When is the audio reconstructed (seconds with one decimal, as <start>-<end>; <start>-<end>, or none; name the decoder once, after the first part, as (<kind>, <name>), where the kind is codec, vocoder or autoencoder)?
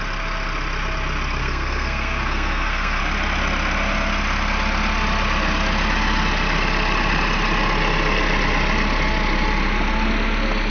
1.4-3.0 (codec, SNAC)